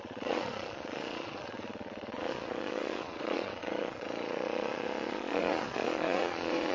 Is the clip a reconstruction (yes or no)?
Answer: yes